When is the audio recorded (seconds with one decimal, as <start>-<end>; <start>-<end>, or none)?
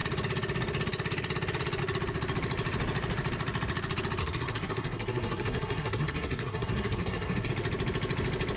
0.0-4.2; 7.5-8.6